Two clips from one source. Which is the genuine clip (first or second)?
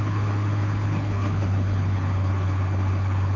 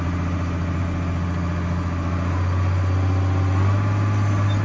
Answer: second